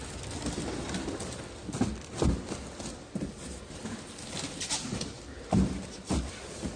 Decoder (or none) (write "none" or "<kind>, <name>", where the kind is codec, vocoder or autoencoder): none